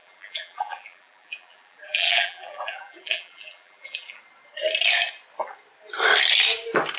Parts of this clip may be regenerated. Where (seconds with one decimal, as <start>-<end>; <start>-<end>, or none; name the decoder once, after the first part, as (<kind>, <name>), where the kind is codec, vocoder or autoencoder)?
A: 0.0-4.2 (vocoder, BigVGAN v2)